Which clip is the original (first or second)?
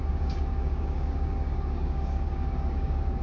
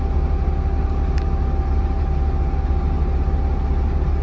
second